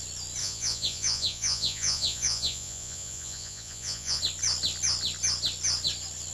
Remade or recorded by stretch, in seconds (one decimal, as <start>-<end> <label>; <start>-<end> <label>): 0.0-0.4 recorded; 0.4-4.2 remade; 4.2-6.3 recorded